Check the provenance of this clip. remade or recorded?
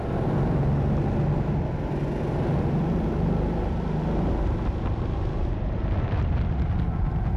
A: recorded